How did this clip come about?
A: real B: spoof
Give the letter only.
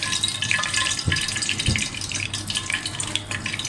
B